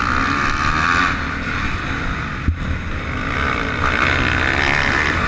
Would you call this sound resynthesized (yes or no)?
no